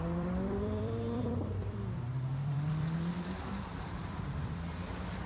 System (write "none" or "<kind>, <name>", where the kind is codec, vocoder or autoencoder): vocoder, BigVGAN v2